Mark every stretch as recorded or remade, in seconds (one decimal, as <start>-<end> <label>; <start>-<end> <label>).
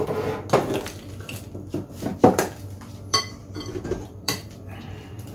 0.0-2.1 recorded; 2.1-5.3 remade